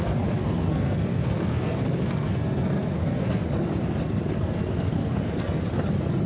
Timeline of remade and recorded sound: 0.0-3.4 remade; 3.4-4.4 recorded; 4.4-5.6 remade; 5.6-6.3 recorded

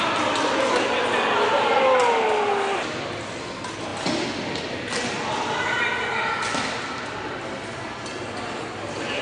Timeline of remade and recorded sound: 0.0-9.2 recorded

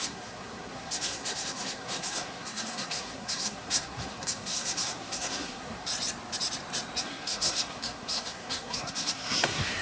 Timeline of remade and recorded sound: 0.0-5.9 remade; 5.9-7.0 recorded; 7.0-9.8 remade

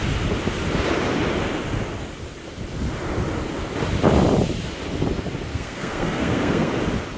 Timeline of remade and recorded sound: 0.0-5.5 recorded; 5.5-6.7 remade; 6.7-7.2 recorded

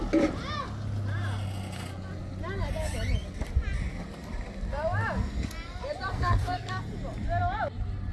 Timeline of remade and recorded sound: 0.0-6.1 recorded; 6.1-6.8 remade; 6.8-8.1 recorded